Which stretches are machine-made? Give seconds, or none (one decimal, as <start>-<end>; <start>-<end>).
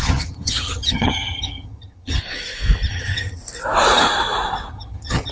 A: 0.0-2.2; 2.9-3.4; 4.7-5.3